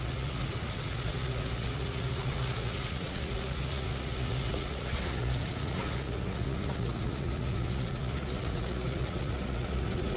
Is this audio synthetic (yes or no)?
yes